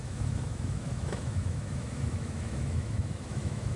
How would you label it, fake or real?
fake